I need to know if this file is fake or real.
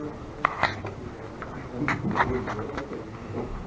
real